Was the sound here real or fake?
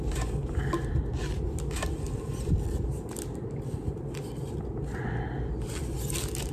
real